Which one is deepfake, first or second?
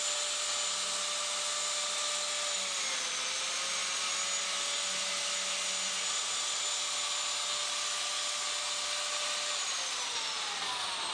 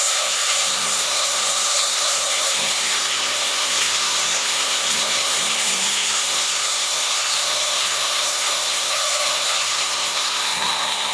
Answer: second